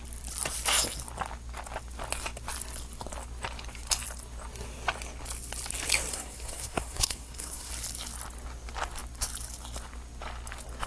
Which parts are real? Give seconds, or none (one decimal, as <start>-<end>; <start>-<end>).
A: 0.0-6.1; 7.7-10.9